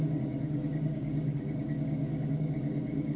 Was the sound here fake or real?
fake